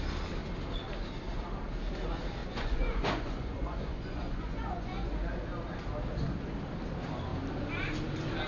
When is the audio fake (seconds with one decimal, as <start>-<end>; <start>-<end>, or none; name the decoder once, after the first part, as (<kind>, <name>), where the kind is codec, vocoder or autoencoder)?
2.4-5.1 (vocoder, Vocos)